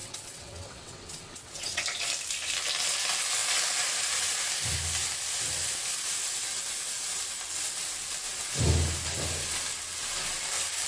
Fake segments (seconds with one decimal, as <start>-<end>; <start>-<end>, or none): 0.0-1.8